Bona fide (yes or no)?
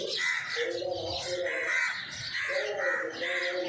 yes